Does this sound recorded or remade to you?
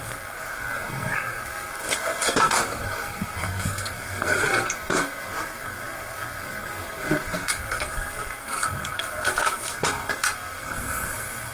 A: remade